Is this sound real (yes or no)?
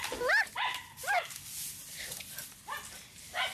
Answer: yes